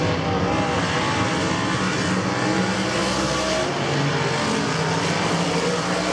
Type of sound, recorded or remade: recorded